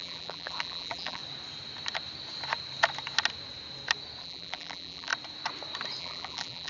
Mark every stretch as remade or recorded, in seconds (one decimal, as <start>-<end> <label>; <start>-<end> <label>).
0.0-1.2 remade; 1.2-4.2 recorded; 4.2-5.1 remade; 5.1-6.0 recorded; 6.0-6.7 remade